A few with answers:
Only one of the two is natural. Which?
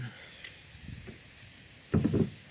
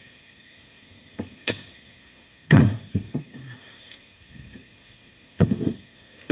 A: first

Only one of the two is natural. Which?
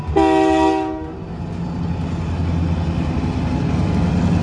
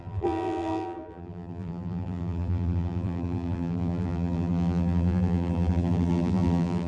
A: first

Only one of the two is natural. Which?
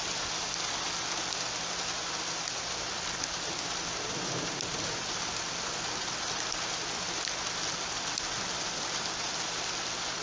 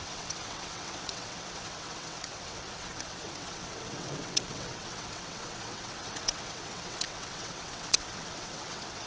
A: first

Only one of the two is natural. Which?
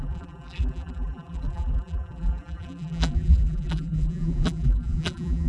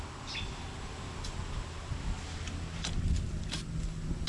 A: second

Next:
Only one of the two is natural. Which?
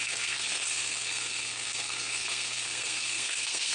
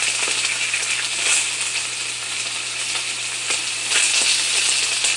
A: second